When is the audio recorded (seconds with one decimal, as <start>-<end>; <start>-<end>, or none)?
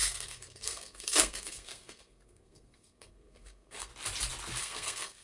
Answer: 3.9-4.6